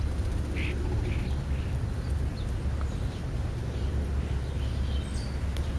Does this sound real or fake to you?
real